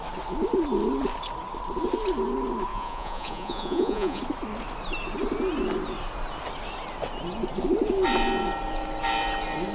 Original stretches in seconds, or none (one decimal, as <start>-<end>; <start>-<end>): 0.0-2.7; 4.2-9.7